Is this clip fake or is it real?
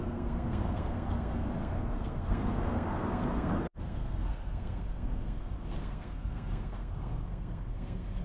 fake